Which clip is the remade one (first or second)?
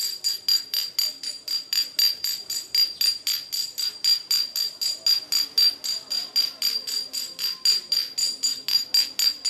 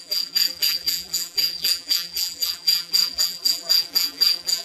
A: second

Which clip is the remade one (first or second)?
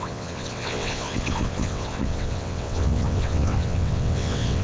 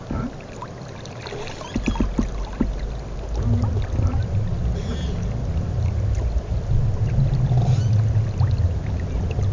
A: first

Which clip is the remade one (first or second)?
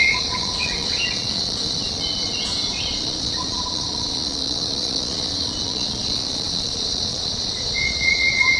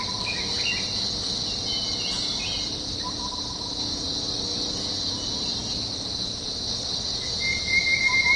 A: first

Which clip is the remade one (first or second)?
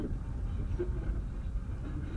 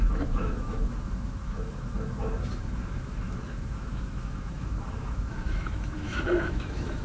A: second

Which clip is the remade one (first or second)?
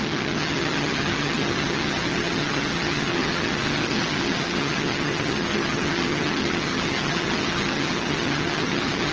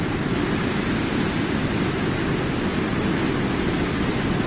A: first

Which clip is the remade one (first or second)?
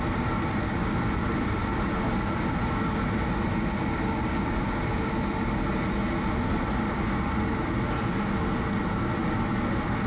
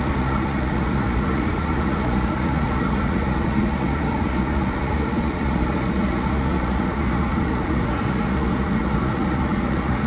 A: second